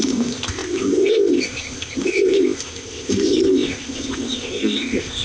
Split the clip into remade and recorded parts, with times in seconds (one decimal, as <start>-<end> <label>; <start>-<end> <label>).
0.0-5.2 remade